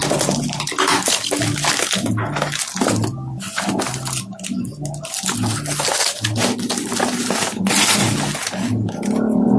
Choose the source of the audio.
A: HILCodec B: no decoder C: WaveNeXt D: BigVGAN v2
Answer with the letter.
B